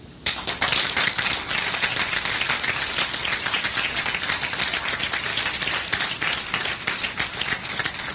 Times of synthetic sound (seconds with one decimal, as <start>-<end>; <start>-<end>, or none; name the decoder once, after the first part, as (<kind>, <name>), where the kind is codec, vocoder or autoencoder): none